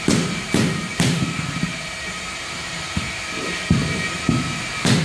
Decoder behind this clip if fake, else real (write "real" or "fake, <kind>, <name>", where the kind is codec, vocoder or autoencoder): fake, vocoder, BigVGAN v2